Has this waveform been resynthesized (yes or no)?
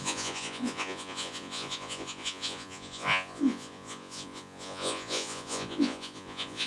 yes